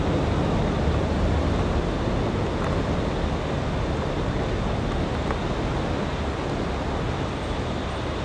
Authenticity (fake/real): real